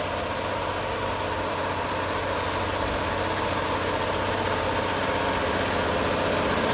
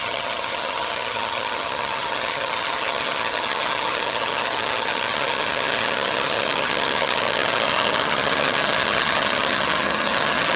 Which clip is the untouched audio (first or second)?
first